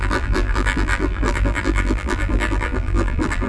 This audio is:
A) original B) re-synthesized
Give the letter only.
B